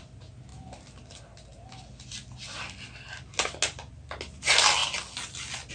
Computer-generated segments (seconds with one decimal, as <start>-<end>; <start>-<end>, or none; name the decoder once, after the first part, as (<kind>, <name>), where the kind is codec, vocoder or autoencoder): none